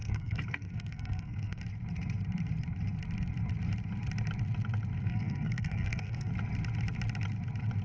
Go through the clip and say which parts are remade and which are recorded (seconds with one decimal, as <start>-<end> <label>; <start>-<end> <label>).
0.0-1.6 remade; 1.6-5.0 recorded; 5.0-6.3 remade; 6.3-7.8 recorded